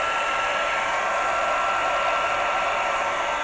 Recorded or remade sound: recorded